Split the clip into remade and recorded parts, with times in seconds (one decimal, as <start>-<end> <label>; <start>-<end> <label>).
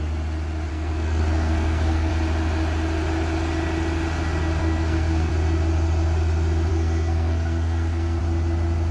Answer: 0.0-0.7 recorded; 0.7-2.1 remade; 2.1-4.6 recorded; 4.6-5.3 remade; 5.3-6.7 recorded; 6.7-8.2 remade; 8.2-8.9 recorded